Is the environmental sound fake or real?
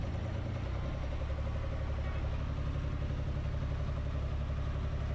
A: real